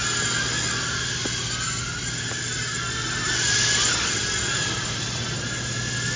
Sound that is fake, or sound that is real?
real